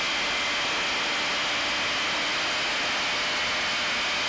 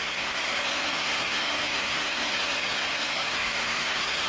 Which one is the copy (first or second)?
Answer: second